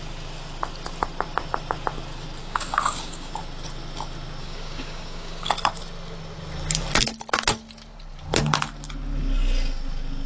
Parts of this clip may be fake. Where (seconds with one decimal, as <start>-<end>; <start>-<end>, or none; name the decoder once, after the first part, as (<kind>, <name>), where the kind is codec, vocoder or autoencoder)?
2.4-3.3 (codec, DAC); 4.4-5.5